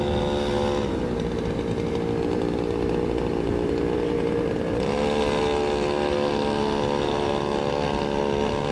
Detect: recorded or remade recorded